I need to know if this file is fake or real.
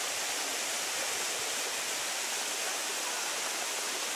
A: real